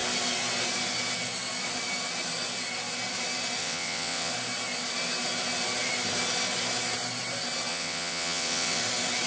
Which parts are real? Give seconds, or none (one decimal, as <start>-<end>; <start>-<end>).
0.0-3.6; 4.3-7.7; 8.8-9.3